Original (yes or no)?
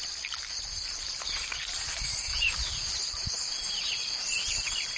no